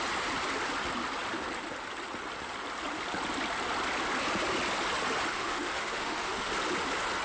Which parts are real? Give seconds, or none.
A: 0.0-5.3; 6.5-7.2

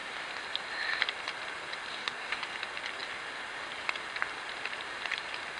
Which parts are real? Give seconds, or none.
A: 0.0-1.9; 2.4-5.6

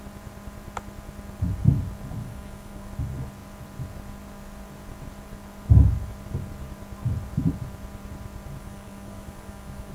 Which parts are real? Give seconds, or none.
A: 0.0-2.2; 2.9-8.6